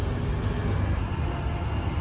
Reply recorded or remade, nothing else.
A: recorded